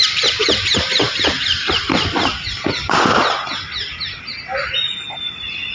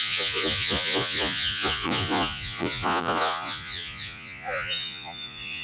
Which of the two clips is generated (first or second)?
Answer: second